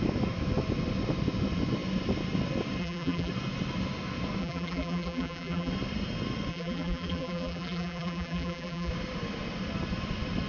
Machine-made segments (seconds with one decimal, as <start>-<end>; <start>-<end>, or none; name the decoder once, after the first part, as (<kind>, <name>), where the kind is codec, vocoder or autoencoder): 2.8-3.3 (vocoder, BigVGAN v2); 4.4-5.7; 6.5-8.9